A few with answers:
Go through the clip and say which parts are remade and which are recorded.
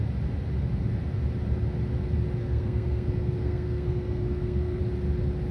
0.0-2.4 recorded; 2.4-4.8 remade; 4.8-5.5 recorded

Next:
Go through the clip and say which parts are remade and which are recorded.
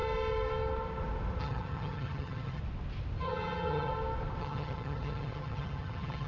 0.0-1.4 recorded; 1.4-2.6 remade; 2.6-3.2 recorded; 3.2-3.9 remade; 3.9-4.4 recorded; 4.4-6.3 remade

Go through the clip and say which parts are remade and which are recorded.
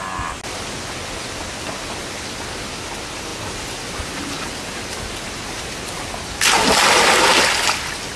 0.0-8.2 recorded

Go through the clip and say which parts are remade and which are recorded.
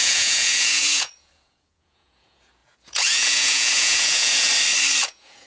0.0-4.5 remade; 4.5-5.0 recorded; 5.0-5.5 remade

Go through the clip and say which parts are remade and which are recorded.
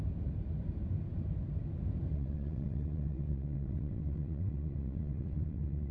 0.0-2.1 recorded; 2.1-5.9 remade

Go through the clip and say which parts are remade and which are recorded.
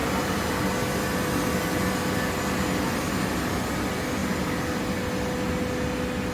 0.0-6.3 recorded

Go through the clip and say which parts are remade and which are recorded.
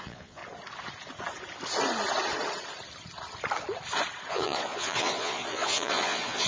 0.0-0.4 remade; 0.4-4.3 recorded; 4.3-6.5 remade